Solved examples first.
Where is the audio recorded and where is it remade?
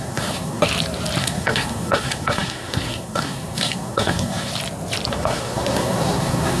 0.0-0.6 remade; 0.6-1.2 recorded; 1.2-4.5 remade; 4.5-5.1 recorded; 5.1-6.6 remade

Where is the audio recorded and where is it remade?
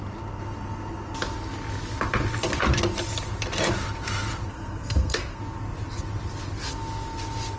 0.0-4.5 recorded; 4.5-5.4 remade; 5.4-7.6 recorded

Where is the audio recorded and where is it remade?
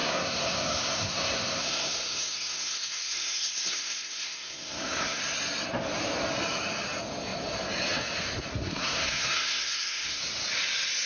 0.0-5.2 remade; 5.2-8.5 recorded; 8.5-10.2 remade; 10.2-11.1 recorded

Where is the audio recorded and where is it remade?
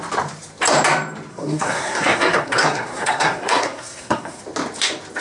0.0-1.3 recorded; 1.3-4.4 remade; 4.4-5.2 recorded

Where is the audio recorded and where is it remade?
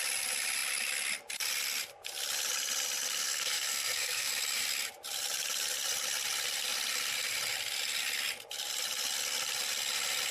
0.0-3.2 recorded; 3.2-4.3 remade; 4.3-10.3 recorded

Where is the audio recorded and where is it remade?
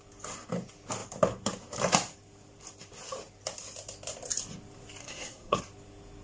0.0-5.0 recorded; 5.0-5.6 remade; 5.6-6.2 recorded